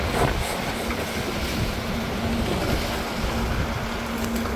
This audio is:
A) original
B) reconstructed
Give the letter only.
A